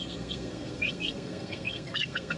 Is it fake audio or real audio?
fake